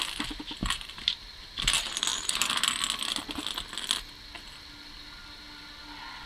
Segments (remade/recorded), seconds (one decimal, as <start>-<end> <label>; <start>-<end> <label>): 0.0-0.6 recorded; 0.6-1.1 remade; 1.1-6.3 recorded